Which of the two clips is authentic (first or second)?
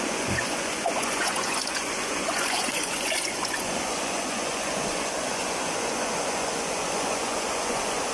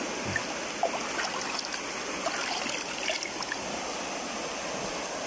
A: second